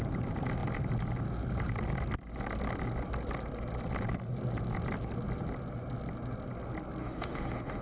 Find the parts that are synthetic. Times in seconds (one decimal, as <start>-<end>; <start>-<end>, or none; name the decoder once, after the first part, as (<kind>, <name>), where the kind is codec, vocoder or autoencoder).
7.0-7.8 (autoencoder, DAC-VAE)